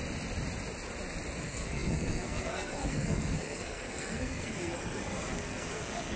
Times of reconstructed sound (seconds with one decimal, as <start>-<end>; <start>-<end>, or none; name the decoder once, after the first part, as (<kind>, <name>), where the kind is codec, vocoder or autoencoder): 1.4-6.2 (codec, SNAC)